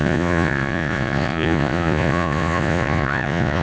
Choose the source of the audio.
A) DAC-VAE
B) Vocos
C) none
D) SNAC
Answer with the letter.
B